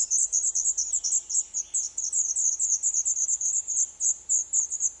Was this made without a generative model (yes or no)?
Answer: yes